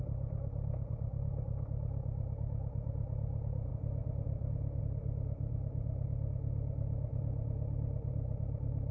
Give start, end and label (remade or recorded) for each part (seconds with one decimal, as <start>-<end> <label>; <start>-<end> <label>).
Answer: 0.0-8.9 recorded